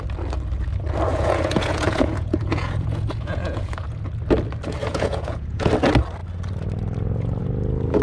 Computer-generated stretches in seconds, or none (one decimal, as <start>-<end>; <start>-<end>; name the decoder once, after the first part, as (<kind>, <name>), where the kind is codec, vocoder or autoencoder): 1.1-4.1 (vocoder, Vocos); 4.8-5.7

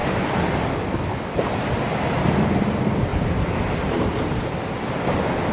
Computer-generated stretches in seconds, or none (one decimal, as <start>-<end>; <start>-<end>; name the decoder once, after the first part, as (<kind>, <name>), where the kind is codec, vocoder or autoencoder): 0.0-5.5 (vocoder, BigVGAN v2)